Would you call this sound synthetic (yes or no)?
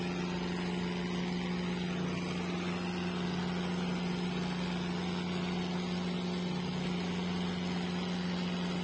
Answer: no